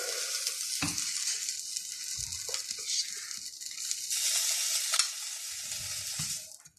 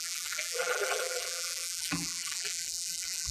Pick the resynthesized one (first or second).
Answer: second